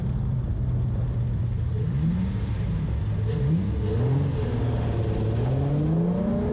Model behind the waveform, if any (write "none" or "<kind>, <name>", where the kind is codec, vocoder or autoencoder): none